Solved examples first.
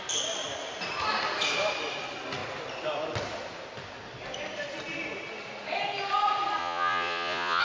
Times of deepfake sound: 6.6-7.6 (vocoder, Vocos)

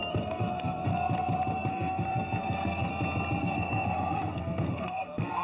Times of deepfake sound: 0.0-0.9 (codec, SNAC); 1.7-2.9; 3.4-5.4

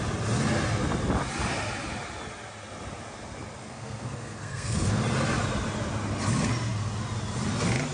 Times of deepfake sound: 3.6-5.0 (codec, SNAC)

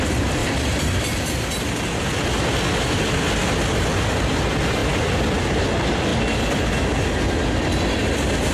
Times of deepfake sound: none

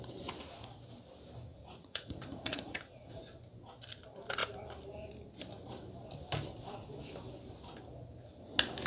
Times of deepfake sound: 1.5-3.2 (vocoder, Vocos)

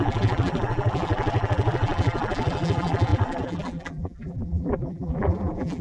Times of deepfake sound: 0.0-5.8 (vocoder, BigVGAN v2)